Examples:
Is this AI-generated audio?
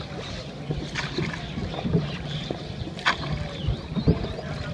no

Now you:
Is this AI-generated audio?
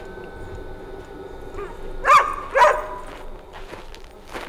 no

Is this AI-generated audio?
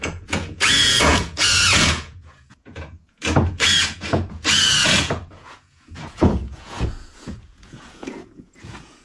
yes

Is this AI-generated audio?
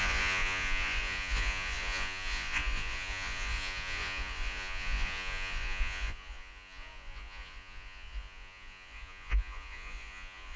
yes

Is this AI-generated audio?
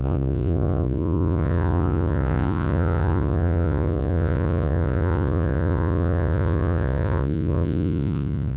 yes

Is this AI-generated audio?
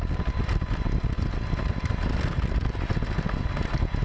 no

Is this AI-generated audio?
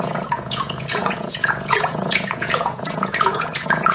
yes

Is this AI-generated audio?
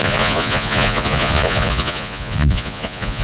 yes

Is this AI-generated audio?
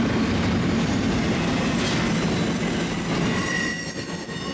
no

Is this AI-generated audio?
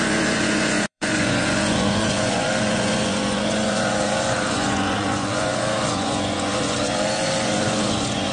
yes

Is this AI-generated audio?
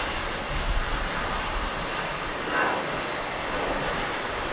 no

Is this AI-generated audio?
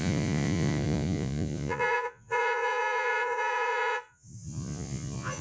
yes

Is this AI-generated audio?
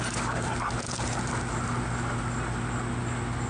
no